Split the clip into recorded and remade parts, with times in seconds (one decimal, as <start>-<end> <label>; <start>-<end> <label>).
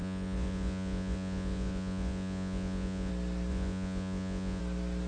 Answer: 0.0-3.1 remade; 3.1-3.5 recorded; 3.5-4.6 remade; 4.6-5.1 recorded